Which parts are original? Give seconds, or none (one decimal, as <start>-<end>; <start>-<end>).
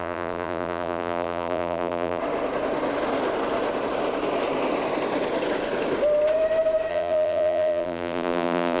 2.2-6.9